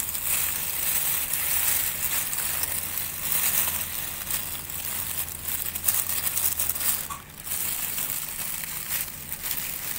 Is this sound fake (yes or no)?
no